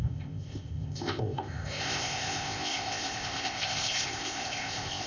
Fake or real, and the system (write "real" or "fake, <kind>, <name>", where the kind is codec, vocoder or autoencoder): fake, codec, ZipCodec